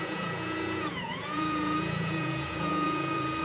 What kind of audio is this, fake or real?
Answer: fake